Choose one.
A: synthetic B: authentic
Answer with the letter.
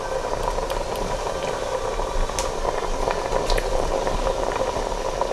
B